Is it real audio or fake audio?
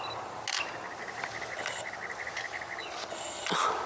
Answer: real